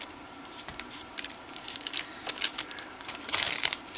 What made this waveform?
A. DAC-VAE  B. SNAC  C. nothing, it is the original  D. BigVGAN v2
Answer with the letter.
D